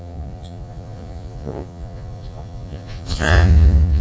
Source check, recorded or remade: remade